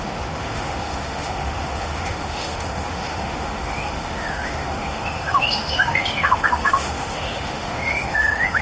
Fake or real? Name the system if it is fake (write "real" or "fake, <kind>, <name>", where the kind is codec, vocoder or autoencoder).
fake, autoencoder, DAC-VAE